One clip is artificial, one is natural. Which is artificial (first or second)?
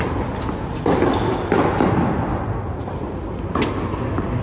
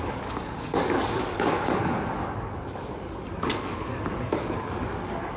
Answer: second